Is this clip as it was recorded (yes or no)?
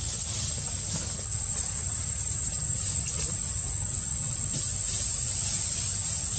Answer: yes